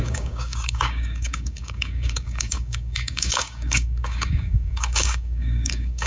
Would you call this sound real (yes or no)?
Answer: no